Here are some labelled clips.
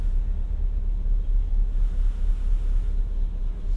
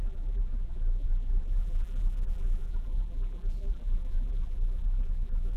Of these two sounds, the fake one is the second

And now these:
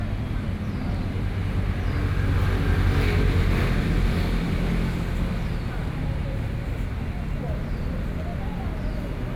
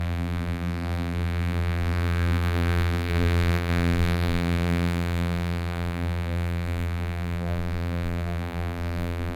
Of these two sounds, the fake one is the second